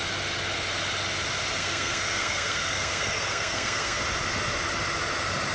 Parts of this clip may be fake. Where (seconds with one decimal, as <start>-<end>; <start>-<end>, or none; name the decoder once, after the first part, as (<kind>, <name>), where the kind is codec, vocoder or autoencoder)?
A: 1.6-4.0 (codec, SNAC)